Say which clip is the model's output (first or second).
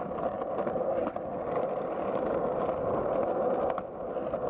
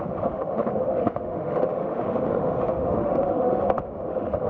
second